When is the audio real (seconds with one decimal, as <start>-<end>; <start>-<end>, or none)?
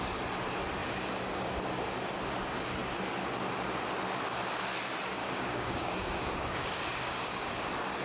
0.0-5.2; 7.5-8.0